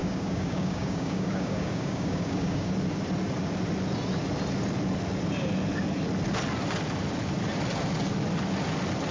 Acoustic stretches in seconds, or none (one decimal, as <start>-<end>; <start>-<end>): 2.7-9.1